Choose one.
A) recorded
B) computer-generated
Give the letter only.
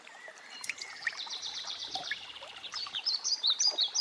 B